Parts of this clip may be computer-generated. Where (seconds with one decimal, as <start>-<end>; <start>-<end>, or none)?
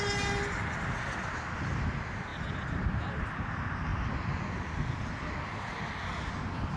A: none